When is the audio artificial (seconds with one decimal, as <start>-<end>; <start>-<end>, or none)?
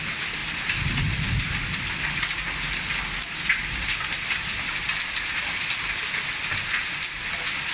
none